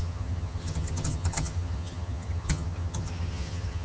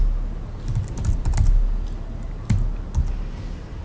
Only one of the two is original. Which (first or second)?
second